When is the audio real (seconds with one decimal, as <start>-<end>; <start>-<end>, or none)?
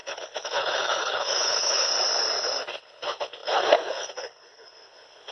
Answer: 1.9-2.8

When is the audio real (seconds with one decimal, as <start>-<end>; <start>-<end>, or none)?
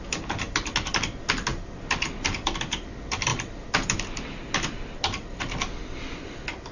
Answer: 0.0-1.5; 2.9-3.3; 5.5-6.7